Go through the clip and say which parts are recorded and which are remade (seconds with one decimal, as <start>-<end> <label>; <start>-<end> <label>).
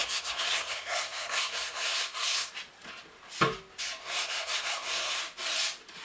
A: 0.0-2.5 remade; 2.5-4.0 recorded; 4.0-5.2 remade; 5.2-6.0 recorded